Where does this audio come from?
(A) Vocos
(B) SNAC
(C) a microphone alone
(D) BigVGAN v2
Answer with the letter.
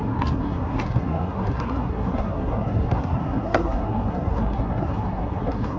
B